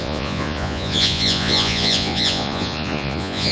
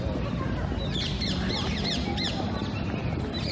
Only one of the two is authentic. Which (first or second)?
second